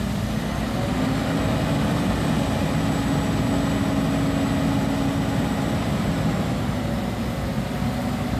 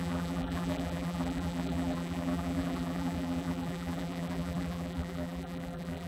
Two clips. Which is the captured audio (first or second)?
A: first